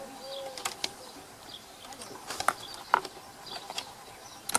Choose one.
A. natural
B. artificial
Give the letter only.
A